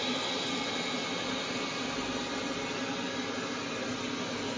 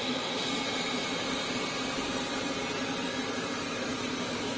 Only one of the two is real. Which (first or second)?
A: first